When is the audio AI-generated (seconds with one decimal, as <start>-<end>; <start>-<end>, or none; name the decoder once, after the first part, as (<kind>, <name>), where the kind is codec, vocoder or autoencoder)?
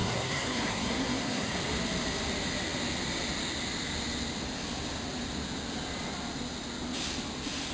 0.0-1.5 (codec, SNAC)